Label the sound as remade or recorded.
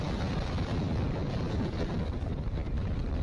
recorded